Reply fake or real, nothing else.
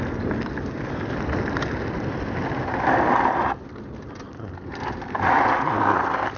real